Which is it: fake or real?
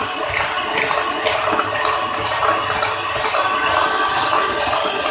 real